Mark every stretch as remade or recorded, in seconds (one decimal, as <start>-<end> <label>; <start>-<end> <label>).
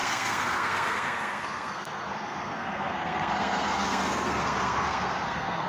0.0-5.7 remade